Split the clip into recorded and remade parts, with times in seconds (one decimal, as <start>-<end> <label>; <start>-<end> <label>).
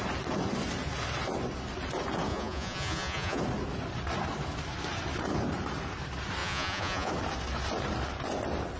0.0-2.3 recorded; 2.3-3.4 remade; 3.4-6.4 recorded; 6.4-7.1 remade; 7.1-8.8 recorded